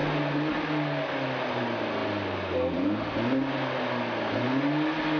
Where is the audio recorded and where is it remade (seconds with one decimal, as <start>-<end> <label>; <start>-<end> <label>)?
0.0-5.2 recorded